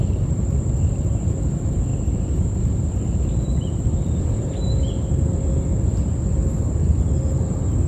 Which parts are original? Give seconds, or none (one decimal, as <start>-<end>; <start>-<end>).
0.0-7.9

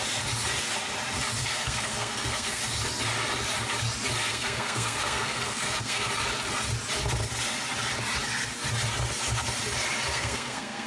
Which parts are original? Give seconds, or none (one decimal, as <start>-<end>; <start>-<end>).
0.0-1.4; 2.6-4.3; 6.1-10.1